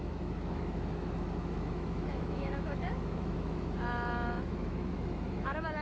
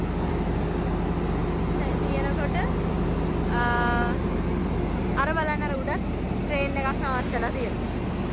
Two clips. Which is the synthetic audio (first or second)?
first